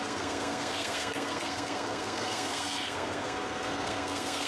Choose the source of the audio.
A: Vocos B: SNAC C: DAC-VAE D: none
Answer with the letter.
B